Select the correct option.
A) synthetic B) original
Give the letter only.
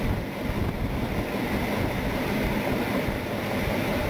B